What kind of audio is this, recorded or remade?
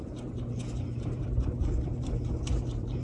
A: remade